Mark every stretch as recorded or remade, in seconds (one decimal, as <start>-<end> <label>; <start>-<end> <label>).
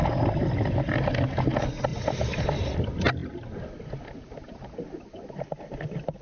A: 0.0-6.2 recorded